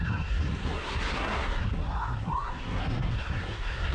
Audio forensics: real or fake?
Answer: fake